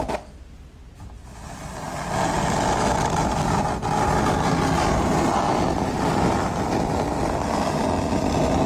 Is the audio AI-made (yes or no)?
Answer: no